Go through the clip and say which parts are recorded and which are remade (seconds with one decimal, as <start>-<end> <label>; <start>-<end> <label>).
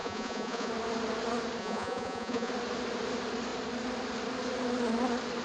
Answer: 0.0-0.7 remade; 0.7-1.6 recorded; 1.6-2.5 remade; 2.5-5.4 recorded